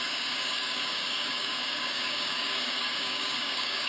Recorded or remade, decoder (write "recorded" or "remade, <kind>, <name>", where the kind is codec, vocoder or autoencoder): remade, codec, DAC